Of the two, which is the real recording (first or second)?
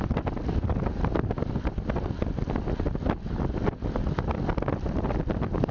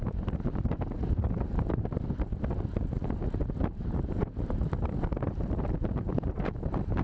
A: first